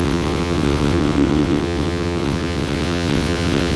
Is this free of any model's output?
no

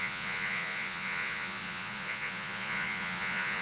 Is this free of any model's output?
no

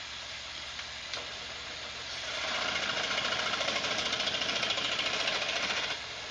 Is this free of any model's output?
no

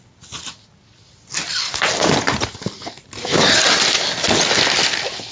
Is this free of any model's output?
yes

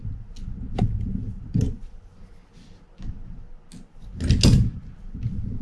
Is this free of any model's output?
yes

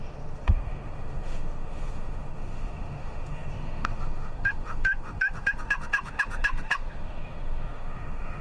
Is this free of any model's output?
no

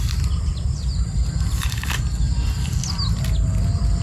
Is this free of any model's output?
yes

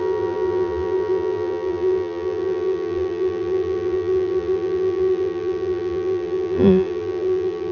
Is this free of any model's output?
no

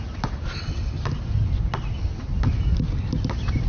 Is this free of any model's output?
yes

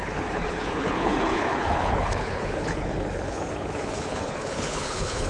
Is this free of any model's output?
no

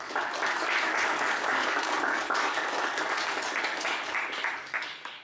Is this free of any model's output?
no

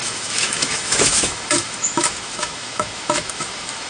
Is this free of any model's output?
no